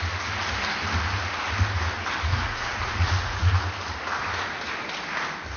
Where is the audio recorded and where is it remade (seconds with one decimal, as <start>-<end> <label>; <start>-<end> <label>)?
0.0-2.3 recorded; 2.3-3.5 remade; 3.5-5.6 recorded